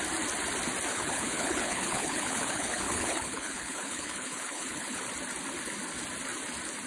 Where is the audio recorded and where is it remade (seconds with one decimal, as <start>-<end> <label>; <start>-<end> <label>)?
0.0-0.9 recorded; 0.9-5.0 remade; 5.0-6.9 recorded